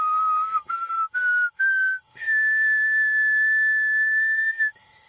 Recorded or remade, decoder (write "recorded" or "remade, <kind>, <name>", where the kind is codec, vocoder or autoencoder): remade, autoencoder, DAC-VAE